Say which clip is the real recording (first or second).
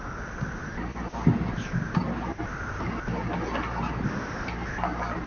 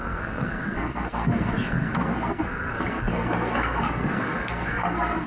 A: first